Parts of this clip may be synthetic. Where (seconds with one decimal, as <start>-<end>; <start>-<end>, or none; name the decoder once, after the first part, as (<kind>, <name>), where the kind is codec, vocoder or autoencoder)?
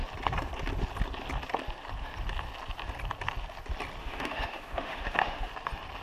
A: 4.0-5.5 (autoencoder, DAC-VAE)